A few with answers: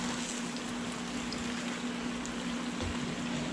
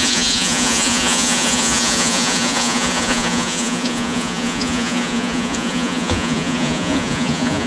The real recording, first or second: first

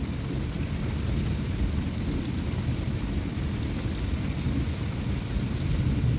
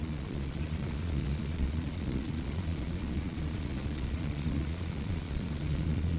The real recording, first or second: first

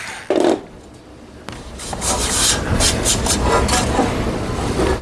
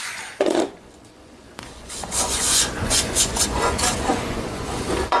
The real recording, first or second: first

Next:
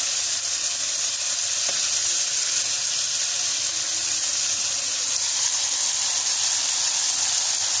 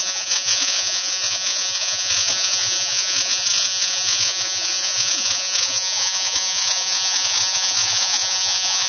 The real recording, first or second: first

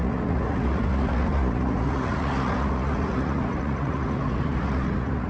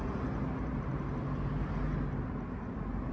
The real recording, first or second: second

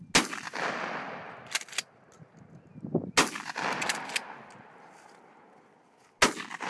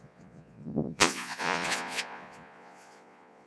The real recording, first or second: first